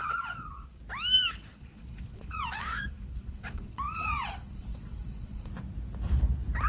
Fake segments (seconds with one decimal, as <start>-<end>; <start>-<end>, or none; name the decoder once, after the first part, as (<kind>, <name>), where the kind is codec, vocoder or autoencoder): 0.0-0.8 (vocoder, Vocos); 1.5-5.5